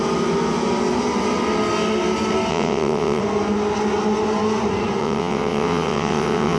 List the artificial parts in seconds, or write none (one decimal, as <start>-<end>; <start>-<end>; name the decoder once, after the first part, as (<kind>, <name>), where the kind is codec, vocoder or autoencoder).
2.5-3.2 (vocoder, WaveNeXt); 5.0-6.6